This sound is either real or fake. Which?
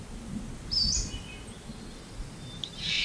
real